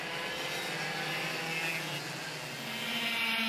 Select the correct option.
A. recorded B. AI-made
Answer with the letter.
A